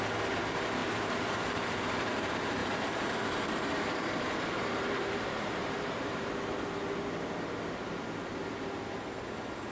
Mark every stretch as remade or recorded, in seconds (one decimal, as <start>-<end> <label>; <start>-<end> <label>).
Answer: 0.0-0.8 recorded; 0.8-2.1 remade; 2.1-2.6 recorded; 2.6-6.2 remade; 6.2-9.7 recorded